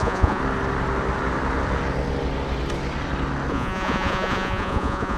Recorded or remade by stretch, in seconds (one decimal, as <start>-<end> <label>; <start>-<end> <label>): 0.0-0.4 remade; 0.4-3.5 recorded; 3.5-5.2 remade